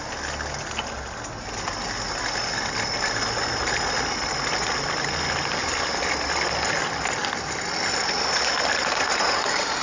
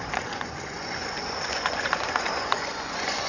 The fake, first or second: second